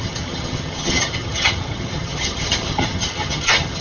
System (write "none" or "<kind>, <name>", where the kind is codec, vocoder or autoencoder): vocoder, HiFi-GAN